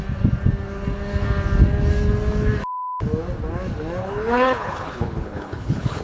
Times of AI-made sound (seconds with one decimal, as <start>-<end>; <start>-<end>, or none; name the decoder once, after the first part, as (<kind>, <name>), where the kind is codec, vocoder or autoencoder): 4.0-6.0 (codec, HILCodec)